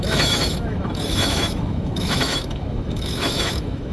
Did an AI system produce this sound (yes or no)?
yes